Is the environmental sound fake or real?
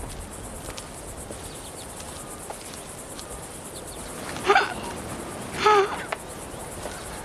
real